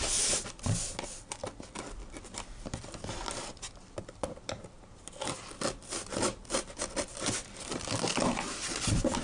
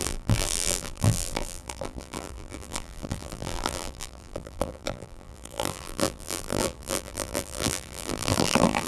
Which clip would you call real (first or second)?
first